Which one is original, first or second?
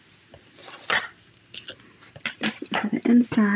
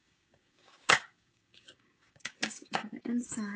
first